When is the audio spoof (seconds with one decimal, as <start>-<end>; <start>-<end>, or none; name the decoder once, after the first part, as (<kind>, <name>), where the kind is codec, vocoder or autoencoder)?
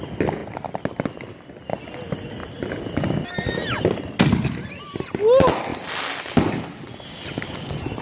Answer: none